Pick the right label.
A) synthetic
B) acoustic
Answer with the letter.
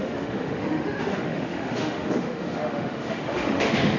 A